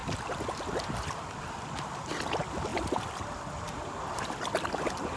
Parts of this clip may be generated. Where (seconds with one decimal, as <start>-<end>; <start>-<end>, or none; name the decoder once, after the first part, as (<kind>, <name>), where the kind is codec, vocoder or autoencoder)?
none